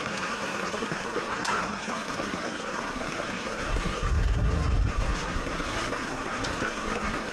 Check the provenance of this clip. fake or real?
fake